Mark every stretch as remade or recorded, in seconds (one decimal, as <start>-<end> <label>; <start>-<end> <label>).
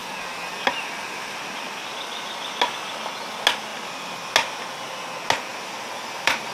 0.0-3.7 recorded; 3.7-4.3 remade; 4.3-5.5 recorded; 5.5-6.5 remade